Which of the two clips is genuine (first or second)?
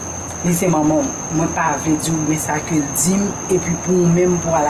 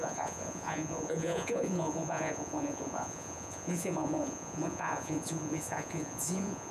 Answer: first